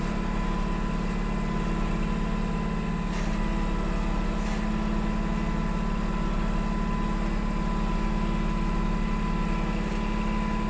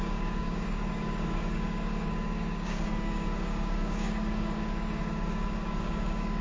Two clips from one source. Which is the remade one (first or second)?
second